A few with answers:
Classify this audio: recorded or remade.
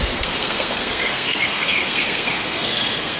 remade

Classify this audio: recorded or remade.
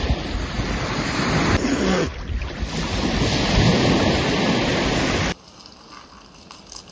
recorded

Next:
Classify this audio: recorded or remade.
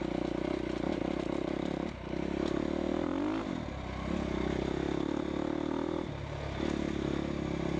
recorded